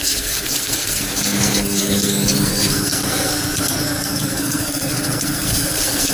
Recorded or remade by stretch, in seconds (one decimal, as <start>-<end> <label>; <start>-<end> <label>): 0.0-6.1 remade